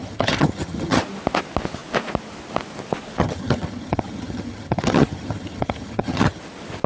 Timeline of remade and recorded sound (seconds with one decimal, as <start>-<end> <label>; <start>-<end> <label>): 0.0-1.0 remade; 1.0-3.2 recorded; 3.2-6.4 remade; 6.4-6.9 recorded